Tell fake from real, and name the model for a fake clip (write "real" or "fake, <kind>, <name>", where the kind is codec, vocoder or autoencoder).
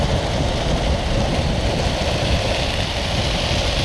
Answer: real